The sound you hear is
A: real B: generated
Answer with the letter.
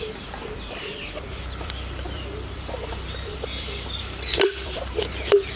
B